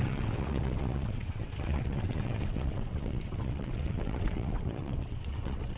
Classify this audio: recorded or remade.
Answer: remade